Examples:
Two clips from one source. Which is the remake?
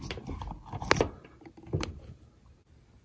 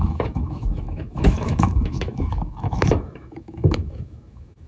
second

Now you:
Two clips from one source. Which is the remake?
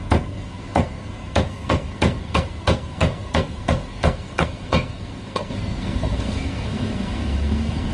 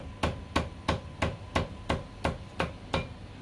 first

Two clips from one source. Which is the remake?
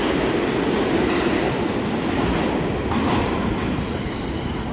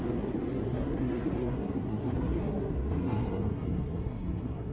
second